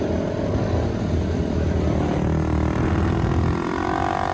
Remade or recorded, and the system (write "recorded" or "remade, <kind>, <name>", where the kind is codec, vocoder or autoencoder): recorded